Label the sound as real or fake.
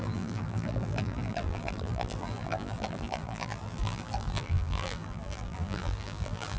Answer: fake